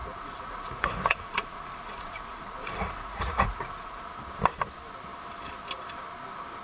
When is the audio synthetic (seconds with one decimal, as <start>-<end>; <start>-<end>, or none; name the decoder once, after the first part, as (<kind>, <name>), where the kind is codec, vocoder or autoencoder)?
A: 0.0-4.0 (vocoder, Vocos)